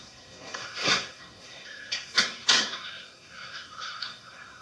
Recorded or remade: remade